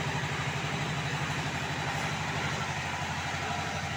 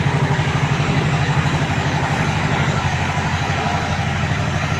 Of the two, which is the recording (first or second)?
first